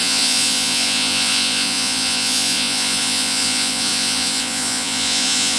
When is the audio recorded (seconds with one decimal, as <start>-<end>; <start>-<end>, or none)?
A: none